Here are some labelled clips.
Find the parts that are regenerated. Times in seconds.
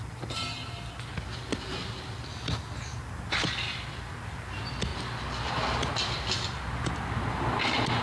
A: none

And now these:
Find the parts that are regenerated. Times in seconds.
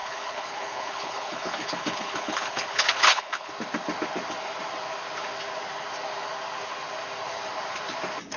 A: 0.0-3.5 (codec, HILCodec)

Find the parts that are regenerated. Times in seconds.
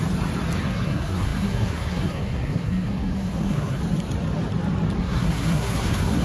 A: 0.6-3.8 (codec, SNAC); 5.0-6.2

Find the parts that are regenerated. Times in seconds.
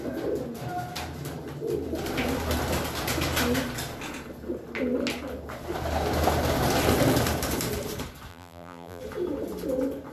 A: 8.3-9.0 (vocoder, BigVGAN v2)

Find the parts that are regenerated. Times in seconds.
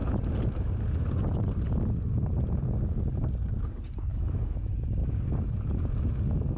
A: 4.1-4.6 (autoencoder, DAC-VAE)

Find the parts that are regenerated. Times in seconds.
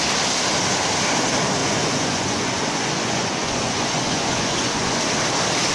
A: 1.6-5.0 (vocoder, Vocos)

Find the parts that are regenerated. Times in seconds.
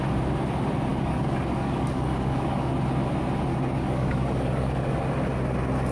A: 0.9-2.7 (codec, DAC); 3.5-4.9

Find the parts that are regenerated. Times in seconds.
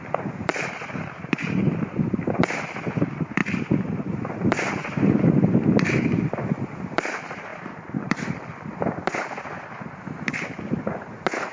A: 7.5-9.2 (vocoder, BigVGAN v2)